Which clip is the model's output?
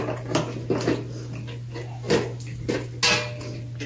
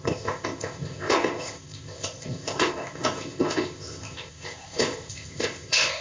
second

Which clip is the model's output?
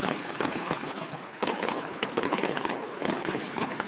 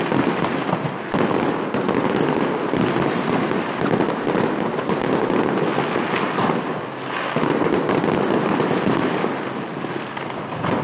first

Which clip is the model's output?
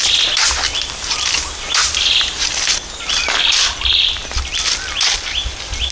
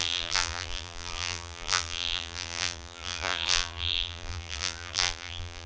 second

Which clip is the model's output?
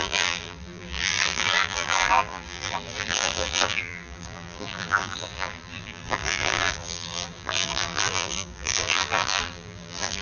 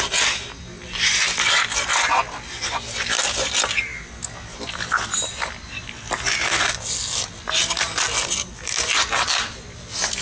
first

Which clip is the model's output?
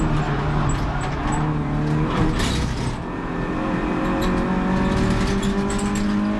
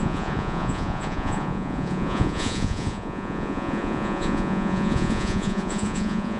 second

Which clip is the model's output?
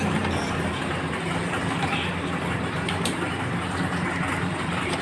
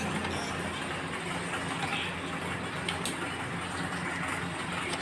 first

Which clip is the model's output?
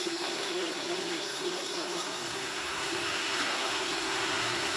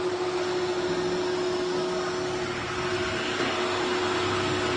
first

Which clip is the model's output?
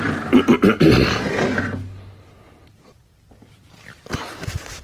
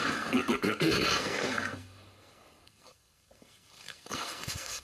second